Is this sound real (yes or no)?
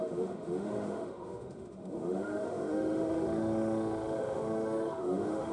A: no